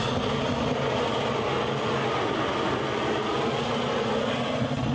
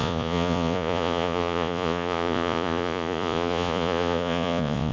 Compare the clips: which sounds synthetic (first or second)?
second